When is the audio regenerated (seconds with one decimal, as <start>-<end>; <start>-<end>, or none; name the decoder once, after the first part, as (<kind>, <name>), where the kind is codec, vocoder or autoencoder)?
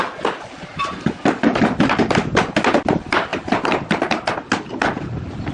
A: 0.7-2.8 (vocoder, BigVGAN v2); 3.3-4.5